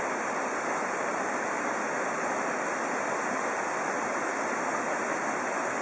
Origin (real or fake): fake